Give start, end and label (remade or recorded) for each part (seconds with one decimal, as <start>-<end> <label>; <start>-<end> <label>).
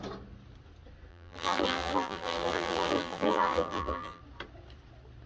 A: 0.0-1.1 recorded; 1.1-4.2 remade; 4.2-5.3 recorded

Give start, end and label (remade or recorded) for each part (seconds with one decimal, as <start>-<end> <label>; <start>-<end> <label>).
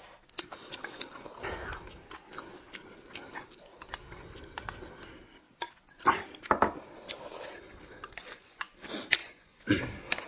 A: 0.0-8.2 recorded; 8.2-8.7 remade; 8.7-9.2 recorded; 9.2-9.8 remade; 9.8-10.3 recorded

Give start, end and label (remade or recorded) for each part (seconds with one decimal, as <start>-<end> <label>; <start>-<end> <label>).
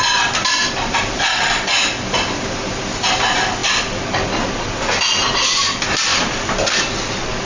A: 0.0-0.4 recorded; 0.4-1.2 remade; 1.2-6.1 recorded; 6.1-6.9 remade; 6.9-7.5 recorded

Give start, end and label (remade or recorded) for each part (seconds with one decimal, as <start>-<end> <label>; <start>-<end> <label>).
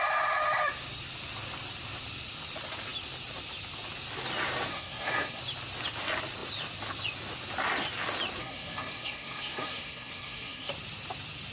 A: 0.0-4.7 recorded; 4.7-5.4 remade; 5.4-8.4 recorded; 8.4-10.7 remade; 10.7-11.5 recorded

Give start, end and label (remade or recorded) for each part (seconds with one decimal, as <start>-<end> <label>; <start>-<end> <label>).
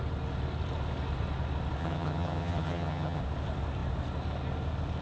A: 0.0-1.8 recorded; 1.8-3.2 remade; 3.2-5.0 recorded